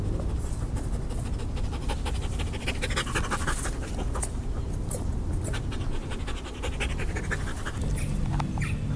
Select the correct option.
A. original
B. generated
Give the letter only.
A